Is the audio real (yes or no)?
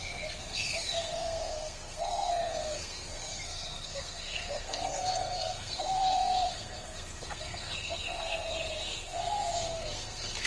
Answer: no